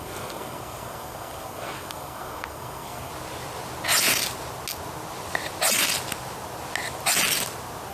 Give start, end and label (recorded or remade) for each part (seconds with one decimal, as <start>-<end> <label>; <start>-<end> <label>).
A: 0.0-3.1 remade; 3.1-7.9 recorded

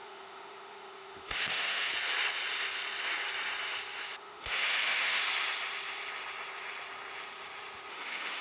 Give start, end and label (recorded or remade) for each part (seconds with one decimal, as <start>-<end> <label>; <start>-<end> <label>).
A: 0.0-1.9 remade; 1.9-4.2 recorded; 4.2-5.2 remade; 5.2-7.9 recorded; 7.9-8.4 remade

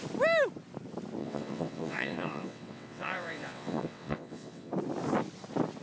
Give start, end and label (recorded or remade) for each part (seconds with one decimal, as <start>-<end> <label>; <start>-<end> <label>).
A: 0.0-1.2 recorded; 1.2-4.7 remade; 4.7-5.8 recorded

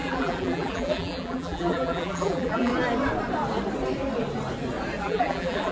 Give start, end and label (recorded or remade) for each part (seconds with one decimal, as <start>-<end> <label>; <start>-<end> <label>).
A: 0.0-2.7 remade; 2.7-5.0 recorded; 5.0-5.7 remade

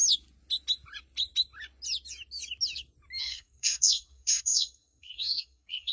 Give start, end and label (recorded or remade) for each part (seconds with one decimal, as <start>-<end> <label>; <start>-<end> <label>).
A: 0.0-3.2 recorded; 3.2-5.9 remade